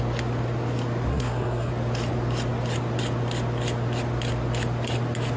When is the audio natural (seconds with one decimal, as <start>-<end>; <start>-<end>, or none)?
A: 0.0-1.1; 1.7-5.4